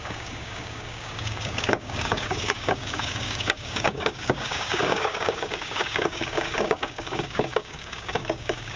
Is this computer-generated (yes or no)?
yes